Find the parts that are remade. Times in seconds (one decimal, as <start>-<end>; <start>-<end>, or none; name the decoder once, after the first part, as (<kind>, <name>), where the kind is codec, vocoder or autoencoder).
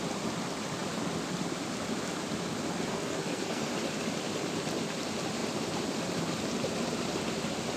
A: 2.9-3.7 (codec, SNAC)